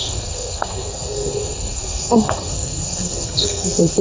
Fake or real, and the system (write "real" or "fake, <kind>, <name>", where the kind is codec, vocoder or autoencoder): fake, codec, SNAC